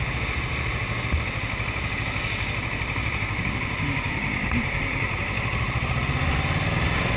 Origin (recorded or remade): recorded